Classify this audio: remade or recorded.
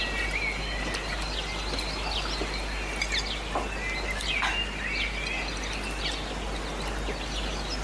recorded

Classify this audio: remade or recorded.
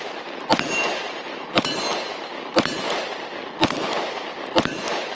recorded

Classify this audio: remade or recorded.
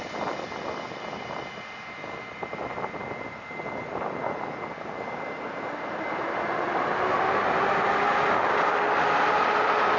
recorded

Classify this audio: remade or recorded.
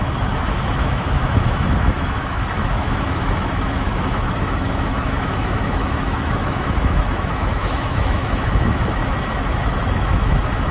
remade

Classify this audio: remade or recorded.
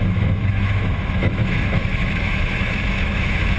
remade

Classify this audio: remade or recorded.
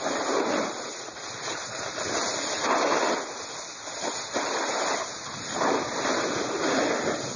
recorded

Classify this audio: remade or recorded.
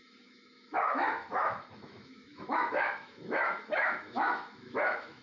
remade